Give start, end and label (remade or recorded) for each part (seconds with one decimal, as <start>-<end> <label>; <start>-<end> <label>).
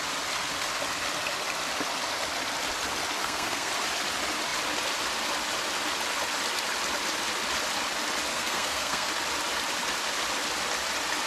0.0-3.2 recorded; 3.2-3.7 remade; 3.7-8.3 recorded; 8.3-9.1 remade; 9.1-11.3 recorded